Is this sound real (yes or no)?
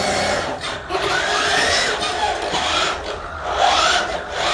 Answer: no